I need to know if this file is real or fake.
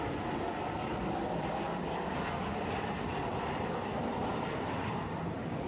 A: real